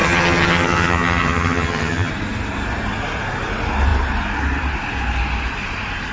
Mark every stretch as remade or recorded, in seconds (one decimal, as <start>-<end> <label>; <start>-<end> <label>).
0.0-2.1 remade; 2.1-6.1 recorded